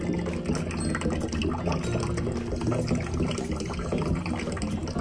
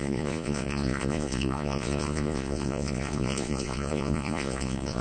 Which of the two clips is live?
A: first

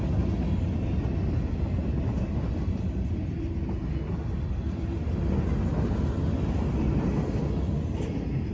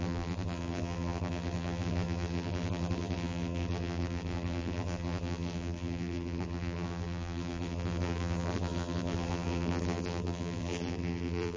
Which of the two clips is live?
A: first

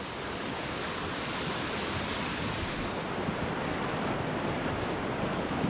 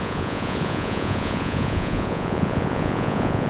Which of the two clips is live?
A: first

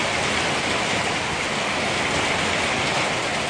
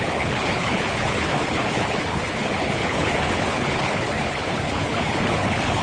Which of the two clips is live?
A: first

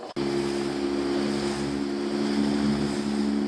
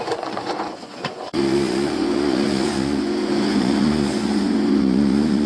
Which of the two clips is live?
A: first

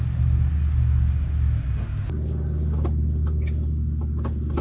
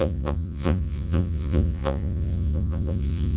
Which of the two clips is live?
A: first